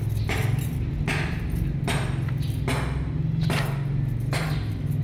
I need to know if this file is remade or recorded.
recorded